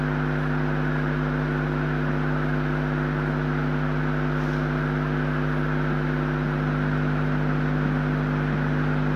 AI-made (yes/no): no